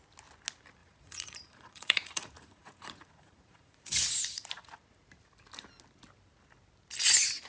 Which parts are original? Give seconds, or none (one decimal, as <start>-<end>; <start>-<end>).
0.0-0.8; 4.0-7.5